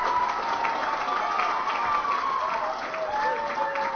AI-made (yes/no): no